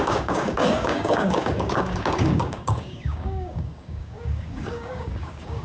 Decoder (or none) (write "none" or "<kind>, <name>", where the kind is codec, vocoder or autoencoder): codec, DAC